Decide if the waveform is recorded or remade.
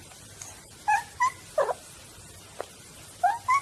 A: recorded